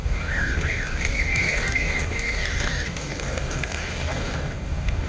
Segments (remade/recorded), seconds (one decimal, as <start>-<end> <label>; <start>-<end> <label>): 0.0-5.1 remade